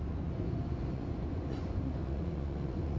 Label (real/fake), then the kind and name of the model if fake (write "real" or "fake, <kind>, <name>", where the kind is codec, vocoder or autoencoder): fake, vocoder, Vocos